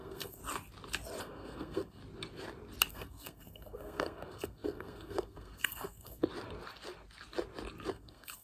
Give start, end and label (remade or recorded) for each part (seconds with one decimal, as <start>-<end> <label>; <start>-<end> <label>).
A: 0.0-0.4 remade; 0.4-1.2 recorded; 1.2-2.0 remade; 2.0-2.9 recorded; 2.9-6.2 remade; 6.2-7.9 recorded; 7.9-8.4 remade